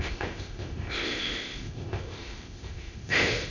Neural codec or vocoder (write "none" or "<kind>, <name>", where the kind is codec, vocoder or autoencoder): codec, ZipCodec